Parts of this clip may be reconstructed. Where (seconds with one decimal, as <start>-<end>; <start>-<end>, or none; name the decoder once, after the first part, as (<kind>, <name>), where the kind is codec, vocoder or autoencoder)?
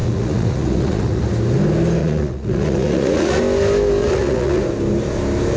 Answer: 0.0-1.2 (vocoder, Vocos); 2.0-3.4; 4.0-4.6